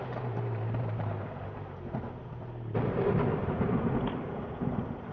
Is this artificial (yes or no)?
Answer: yes